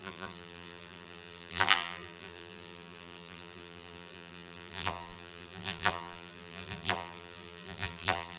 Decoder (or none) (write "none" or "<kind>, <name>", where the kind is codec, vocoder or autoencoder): vocoder, BigVGAN v2